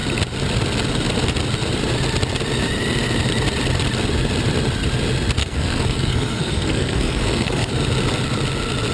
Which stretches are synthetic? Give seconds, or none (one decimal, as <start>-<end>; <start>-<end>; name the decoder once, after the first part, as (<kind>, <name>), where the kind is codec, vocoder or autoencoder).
5.4-7.7 (codec, SNAC)